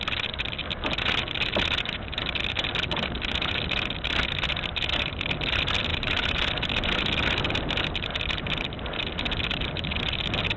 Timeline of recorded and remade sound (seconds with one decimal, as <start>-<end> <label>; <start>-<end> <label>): 0.0-5.9 recorded; 5.9-6.5 remade; 6.5-10.6 recorded